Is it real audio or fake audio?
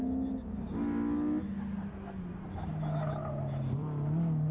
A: real